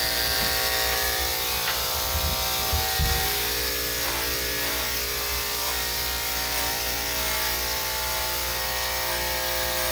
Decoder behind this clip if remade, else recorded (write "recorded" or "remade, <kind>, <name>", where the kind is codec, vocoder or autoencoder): recorded